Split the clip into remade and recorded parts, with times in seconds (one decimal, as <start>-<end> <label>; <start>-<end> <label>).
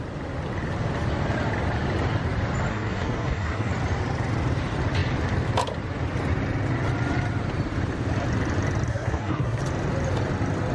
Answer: 0.0-2.7 recorded; 2.7-3.7 remade; 3.7-8.9 recorded; 8.9-9.6 remade; 9.6-10.7 recorded